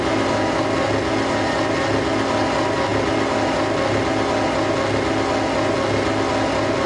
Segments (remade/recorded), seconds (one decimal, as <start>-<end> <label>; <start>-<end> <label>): 0.0-6.9 recorded